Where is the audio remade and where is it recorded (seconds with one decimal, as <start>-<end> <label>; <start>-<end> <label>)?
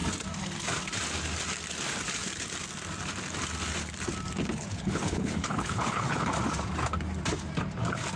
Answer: 0.0-4.4 recorded; 4.4-6.3 remade; 6.3-8.2 recorded